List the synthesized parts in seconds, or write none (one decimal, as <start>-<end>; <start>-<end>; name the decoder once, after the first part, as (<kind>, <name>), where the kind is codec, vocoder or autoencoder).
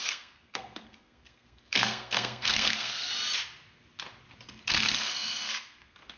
0.0-3.1 (codec, SNAC); 4.7-6.2